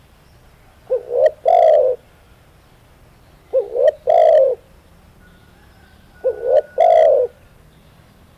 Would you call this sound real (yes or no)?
yes